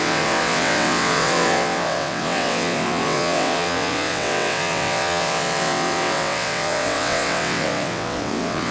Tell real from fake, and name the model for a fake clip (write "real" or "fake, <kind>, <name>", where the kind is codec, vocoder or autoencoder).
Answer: fake, vocoder, WaveNeXt